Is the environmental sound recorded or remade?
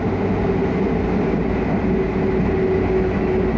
recorded